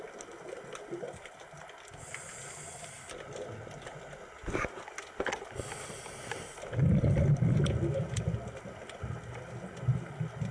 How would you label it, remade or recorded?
recorded